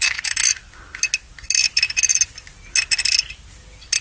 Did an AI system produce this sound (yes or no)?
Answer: no